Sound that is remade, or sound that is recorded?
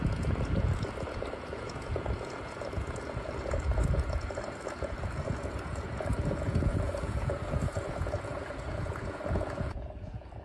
remade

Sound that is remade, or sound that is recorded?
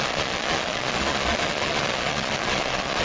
remade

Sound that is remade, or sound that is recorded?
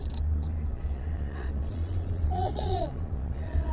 remade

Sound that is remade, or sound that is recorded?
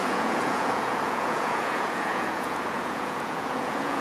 remade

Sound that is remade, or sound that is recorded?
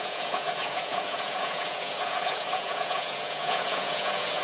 remade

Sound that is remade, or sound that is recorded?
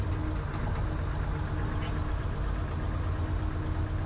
recorded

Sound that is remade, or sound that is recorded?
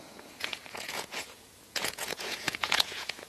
remade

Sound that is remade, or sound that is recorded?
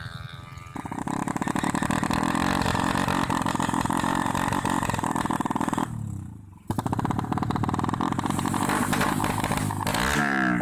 recorded